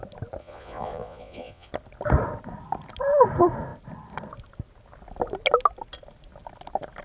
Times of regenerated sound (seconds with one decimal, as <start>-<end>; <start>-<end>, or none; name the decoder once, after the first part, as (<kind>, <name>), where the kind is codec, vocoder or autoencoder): 0.4-1.7 (vocoder, Vocos)